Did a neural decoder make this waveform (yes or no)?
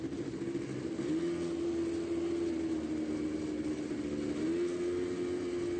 no